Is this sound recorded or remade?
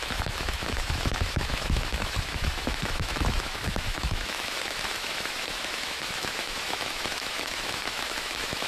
remade